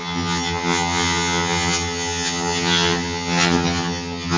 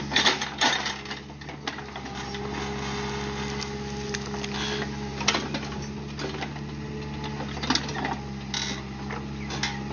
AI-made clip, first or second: first